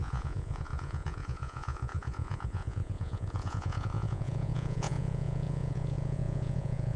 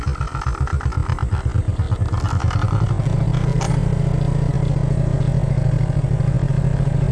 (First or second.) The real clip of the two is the second